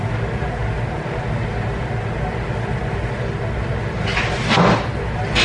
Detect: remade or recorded recorded